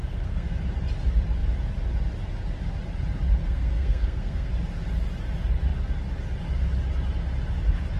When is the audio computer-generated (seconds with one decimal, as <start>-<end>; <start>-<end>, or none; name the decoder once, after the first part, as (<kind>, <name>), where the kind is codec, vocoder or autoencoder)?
0.0-0.5 (codec, SNAC); 3.4-4.5